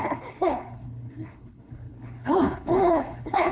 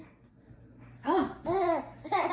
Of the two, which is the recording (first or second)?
second